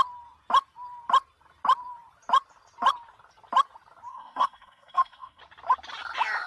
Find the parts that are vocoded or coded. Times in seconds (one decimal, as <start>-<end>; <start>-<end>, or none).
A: 4.1-5.4